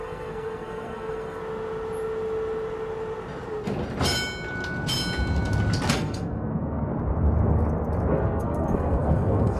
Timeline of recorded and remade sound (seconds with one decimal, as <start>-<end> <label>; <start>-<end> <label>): 0.0-1.4 remade; 1.4-5.9 recorded; 5.9-6.9 remade; 6.9-8.1 recorded; 8.1-9.6 remade